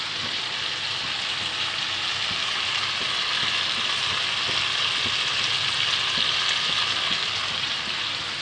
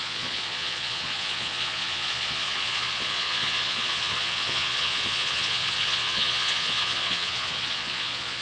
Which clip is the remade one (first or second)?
second